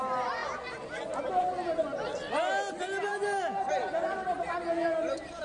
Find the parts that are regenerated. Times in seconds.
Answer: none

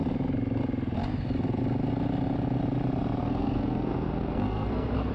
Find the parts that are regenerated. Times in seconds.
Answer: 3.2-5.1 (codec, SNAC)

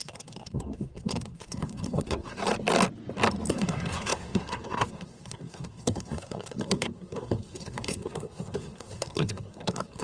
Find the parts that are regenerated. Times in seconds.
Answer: 0.0-2.4 (codec, SNAC); 3.5-10.0

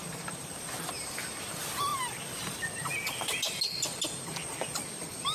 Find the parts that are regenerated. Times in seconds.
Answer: none

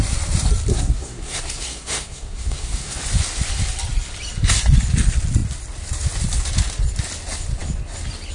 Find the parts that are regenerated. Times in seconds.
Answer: 0.7-3.0 (codec, SNAC)